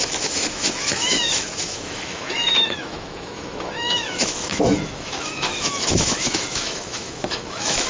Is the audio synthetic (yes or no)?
yes